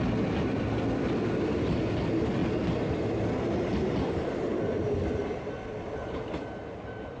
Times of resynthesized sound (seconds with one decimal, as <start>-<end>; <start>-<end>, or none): none

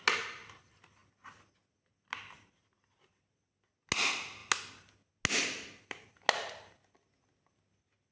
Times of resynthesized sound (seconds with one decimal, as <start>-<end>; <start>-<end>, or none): none

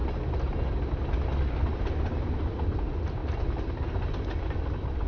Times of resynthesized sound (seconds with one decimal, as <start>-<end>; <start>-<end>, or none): none

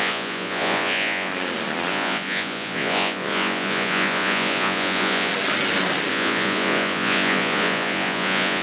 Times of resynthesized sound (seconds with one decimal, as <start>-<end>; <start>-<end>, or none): 0.0-1.3; 1.9-5.3; 6.1-8.6

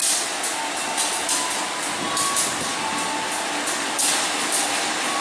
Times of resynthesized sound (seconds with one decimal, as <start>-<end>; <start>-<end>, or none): none

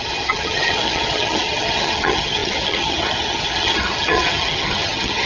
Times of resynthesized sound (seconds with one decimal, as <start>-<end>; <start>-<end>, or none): 0.0-5.3

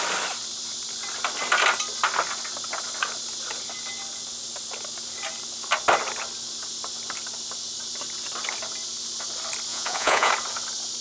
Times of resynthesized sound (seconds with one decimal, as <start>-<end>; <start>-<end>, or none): 9.7-10.3

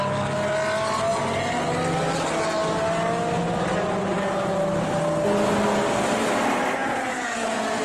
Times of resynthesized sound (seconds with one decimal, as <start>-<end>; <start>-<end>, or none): 6.8-7.8